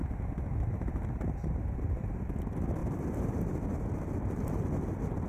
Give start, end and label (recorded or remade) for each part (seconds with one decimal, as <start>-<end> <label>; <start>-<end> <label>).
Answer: 0.0-2.8 recorded; 2.8-3.3 remade; 3.3-5.3 recorded

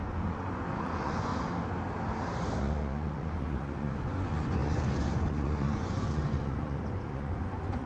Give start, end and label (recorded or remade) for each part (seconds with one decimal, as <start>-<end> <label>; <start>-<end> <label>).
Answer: 0.0-1.3 remade; 1.3-2.6 recorded; 2.6-7.9 remade